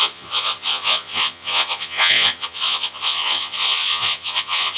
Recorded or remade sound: remade